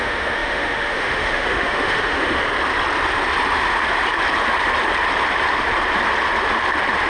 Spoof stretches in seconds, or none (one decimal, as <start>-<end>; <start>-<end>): 0.0-2.4